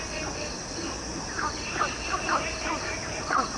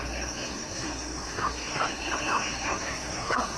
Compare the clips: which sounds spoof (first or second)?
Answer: second